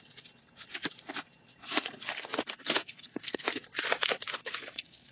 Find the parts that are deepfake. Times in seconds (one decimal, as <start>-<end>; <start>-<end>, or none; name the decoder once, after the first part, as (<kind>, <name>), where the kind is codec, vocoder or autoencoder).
2.1-3.6 (codec, SNAC); 4.4-5.1

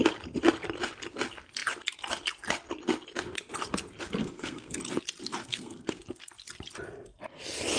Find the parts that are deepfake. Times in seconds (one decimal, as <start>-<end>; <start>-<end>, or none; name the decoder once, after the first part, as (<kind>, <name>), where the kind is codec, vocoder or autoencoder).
4.2-4.8 (codec, SNAC); 5.4-6.0